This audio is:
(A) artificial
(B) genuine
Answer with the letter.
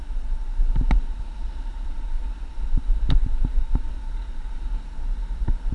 B